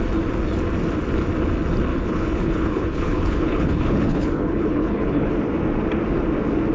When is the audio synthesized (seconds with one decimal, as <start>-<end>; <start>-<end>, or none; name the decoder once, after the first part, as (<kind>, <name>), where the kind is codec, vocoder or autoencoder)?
1.9-5.3 (codec, HILCodec)